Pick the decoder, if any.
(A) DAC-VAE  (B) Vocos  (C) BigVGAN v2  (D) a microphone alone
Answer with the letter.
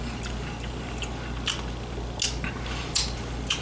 D